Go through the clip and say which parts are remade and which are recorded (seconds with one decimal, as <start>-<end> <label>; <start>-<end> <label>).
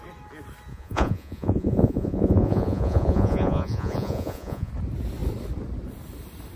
0.0-0.7 recorded; 0.7-4.7 remade; 4.7-6.6 recorded